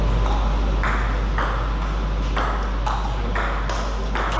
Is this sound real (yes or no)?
yes